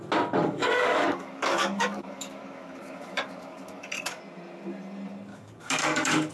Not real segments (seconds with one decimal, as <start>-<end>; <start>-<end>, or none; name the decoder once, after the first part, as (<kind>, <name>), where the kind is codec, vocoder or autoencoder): 0.4-4.2 (codec, DAC); 5.3-6.3